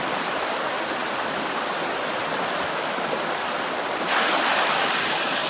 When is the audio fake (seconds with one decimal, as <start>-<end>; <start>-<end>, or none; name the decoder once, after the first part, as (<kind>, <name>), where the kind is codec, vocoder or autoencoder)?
none